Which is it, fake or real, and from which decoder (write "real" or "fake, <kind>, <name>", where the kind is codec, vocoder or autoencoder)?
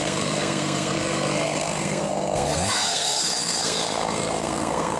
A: fake, codec, SNAC